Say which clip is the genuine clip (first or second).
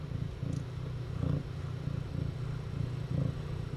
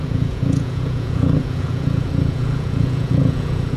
first